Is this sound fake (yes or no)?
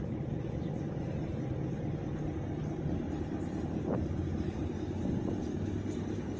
no